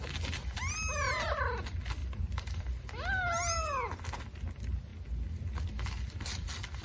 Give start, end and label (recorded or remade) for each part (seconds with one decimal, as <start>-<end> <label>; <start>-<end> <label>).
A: 0.0-6.8 recorded